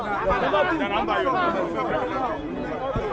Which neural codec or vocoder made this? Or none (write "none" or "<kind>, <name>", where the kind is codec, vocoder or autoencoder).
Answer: none